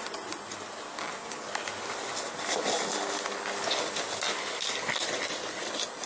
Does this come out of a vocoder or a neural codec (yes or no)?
no